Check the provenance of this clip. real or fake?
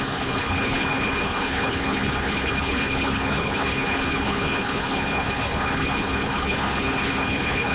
fake